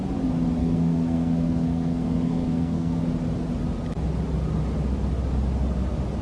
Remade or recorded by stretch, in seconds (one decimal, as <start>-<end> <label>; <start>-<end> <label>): 0.0-0.6 recorded; 0.6-3.0 remade; 3.0-6.2 recorded